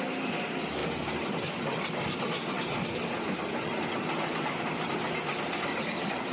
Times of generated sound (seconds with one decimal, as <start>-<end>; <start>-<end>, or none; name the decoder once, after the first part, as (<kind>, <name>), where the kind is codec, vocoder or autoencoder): none